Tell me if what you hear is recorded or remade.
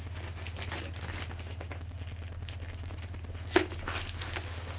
recorded